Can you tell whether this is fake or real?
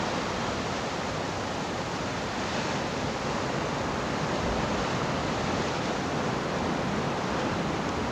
real